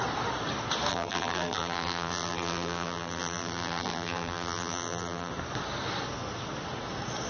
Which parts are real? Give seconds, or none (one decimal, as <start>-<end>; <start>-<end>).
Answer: 0.0-0.9; 5.3-7.3